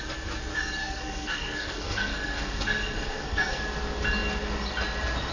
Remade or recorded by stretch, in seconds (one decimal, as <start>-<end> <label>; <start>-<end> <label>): 0.0-0.8 recorded; 0.8-3.6 remade; 3.6-5.3 recorded